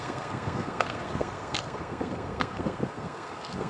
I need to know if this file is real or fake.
fake